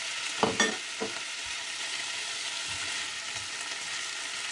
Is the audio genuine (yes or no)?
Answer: yes